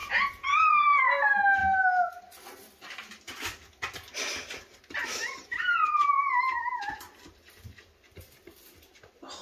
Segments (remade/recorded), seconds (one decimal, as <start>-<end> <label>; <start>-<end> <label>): 0.0-0.7 remade; 0.7-9.4 recorded